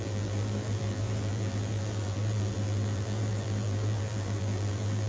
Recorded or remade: remade